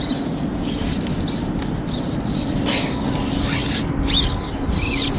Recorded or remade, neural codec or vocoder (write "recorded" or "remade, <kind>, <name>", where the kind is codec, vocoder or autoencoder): recorded